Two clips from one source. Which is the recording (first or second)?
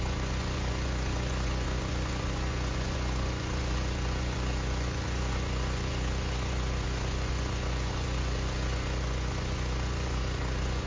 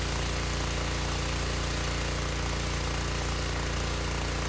second